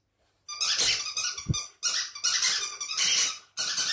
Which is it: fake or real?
real